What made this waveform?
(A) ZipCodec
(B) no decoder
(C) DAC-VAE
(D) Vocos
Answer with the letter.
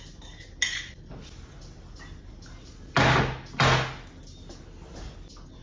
B